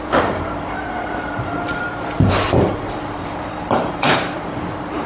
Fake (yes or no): yes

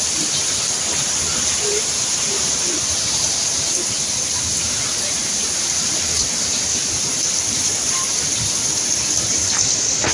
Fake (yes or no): yes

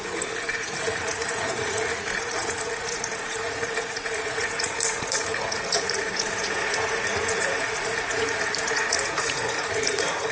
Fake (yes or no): yes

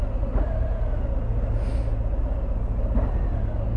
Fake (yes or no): no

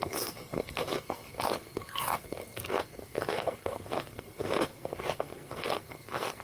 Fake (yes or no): yes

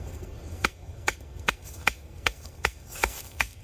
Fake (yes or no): yes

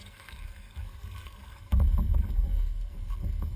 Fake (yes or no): yes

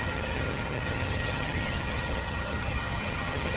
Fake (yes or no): yes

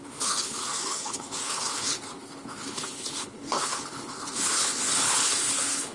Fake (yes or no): yes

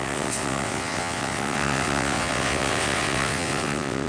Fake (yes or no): yes